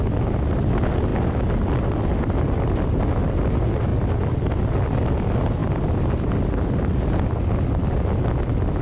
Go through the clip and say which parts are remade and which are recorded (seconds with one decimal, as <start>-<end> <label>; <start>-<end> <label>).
0.0-8.8 recorded